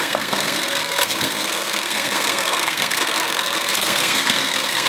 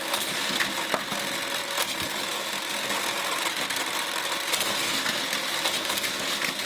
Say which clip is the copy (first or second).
first